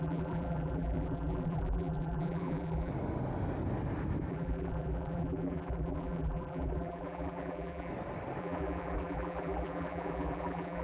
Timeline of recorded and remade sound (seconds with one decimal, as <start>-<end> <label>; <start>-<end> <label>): 0.0-2.9 remade; 2.9-4.3 recorded; 4.3-7.9 remade; 7.9-8.4 recorded; 8.4-10.8 remade